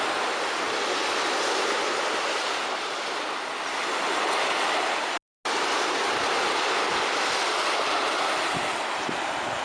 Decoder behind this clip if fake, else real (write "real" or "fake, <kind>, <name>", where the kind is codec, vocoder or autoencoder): real